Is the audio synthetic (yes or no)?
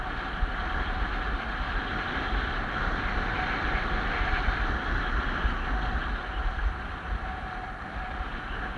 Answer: no